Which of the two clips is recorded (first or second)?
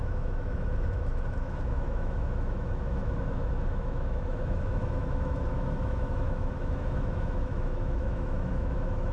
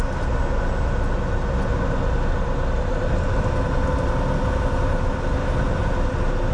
second